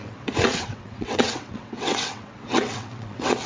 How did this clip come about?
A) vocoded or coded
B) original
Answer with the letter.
A